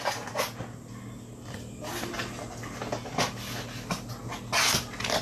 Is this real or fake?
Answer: real